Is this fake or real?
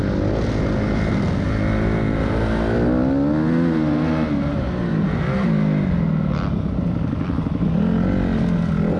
real